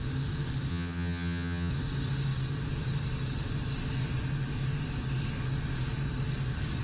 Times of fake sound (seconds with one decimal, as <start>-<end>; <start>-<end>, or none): 0.7-1.7